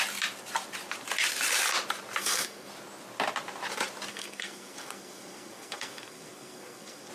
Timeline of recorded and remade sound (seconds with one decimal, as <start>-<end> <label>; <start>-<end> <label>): 0.0-2.2 recorded; 2.2-2.7 remade; 2.7-4.1 recorded; 4.1-7.1 remade